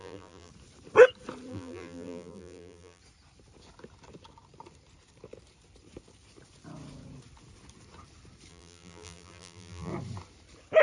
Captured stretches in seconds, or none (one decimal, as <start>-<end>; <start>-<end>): 0.5-1.5; 3.0-8.5; 9.9-10.8